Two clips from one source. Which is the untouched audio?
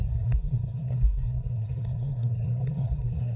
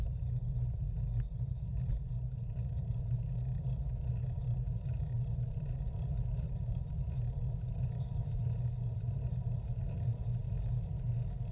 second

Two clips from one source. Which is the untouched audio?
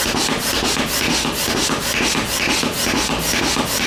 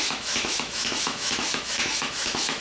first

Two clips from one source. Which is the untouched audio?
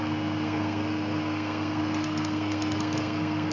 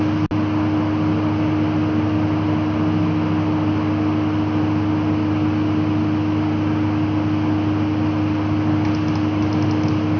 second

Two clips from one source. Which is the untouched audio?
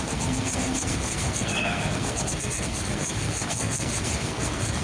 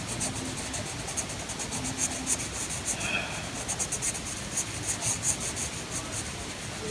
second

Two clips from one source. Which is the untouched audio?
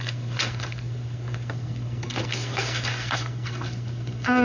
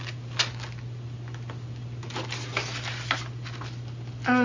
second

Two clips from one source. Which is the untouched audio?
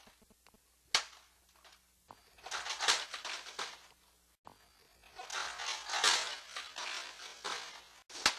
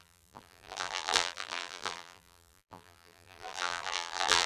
first